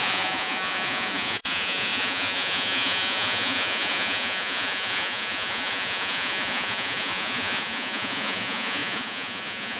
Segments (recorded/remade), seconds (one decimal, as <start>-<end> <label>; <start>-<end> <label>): 0.0-9.8 remade